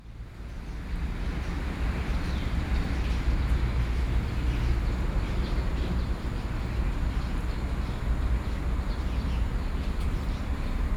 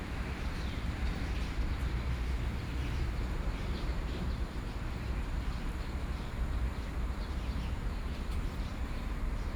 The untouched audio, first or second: first